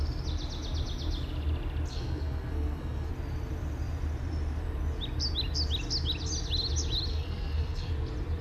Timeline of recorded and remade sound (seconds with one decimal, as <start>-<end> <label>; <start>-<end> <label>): 0.0-1.9 recorded; 1.9-3.1 remade; 3.1-7.1 recorded; 7.1-7.9 remade; 7.9-8.4 recorded